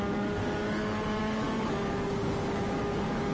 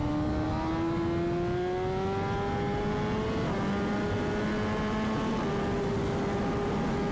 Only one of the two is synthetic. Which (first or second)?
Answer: first